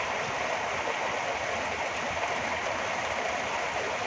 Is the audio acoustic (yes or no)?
yes